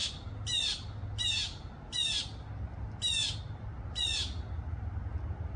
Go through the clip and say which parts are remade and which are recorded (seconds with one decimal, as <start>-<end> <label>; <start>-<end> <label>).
0.0-5.6 recorded